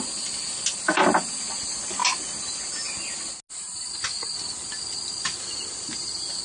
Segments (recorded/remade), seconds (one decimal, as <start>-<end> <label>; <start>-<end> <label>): 0.0-6.4 recorded